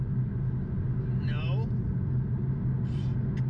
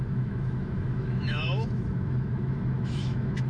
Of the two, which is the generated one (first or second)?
second